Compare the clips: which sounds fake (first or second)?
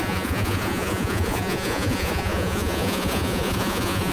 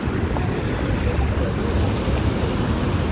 first